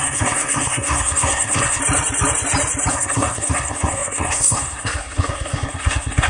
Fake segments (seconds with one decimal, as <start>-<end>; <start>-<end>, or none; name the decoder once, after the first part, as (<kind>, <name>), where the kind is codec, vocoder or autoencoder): 0.0-1.8 (codec, SNAC); 2.9-6.3